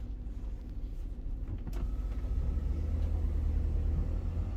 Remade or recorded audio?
recorded